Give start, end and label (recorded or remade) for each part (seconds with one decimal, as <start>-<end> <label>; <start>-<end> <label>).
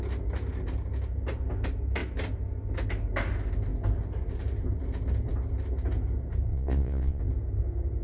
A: 0.0-6.5 recorded; 6.5-7.2 remade; 7.2-8.0 recorded